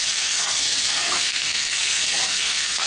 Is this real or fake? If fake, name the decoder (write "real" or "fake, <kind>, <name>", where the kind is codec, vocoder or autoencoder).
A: fake, codec, SNAC